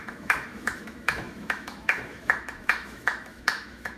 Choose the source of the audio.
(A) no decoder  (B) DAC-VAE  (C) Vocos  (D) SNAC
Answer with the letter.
B